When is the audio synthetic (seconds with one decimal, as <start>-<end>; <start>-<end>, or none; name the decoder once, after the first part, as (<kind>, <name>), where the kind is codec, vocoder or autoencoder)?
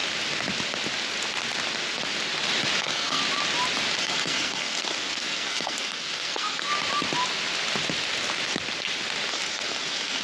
2.8-3.2 (codec, SNAC); 4.0-6.7; 9.3-10.2